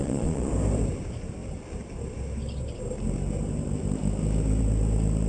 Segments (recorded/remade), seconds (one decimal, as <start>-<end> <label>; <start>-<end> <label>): 0.0-0.5 remade; 0.5-5.3 recorded